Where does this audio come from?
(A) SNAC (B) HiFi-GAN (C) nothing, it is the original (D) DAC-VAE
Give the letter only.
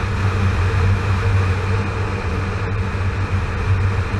C